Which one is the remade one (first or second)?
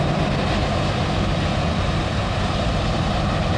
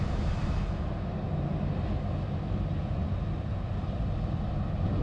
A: first